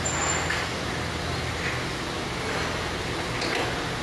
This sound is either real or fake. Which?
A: real